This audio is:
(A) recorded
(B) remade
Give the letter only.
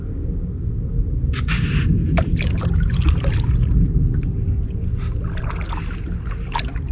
A